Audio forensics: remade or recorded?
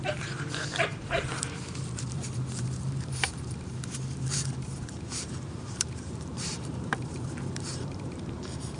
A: remade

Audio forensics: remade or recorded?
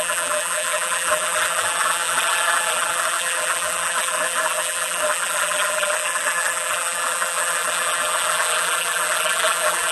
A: remade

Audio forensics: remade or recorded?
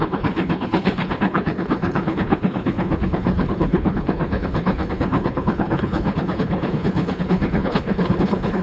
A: remade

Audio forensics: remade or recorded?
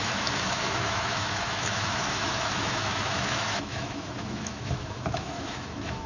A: remade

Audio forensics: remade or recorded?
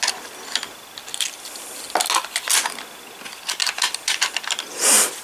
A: recorded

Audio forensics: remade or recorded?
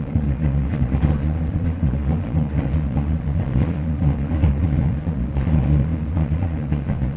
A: remade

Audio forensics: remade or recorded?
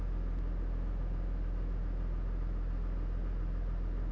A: recorded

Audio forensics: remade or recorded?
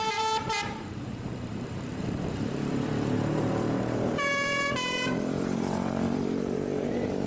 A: remade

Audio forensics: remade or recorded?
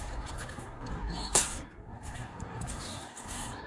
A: remade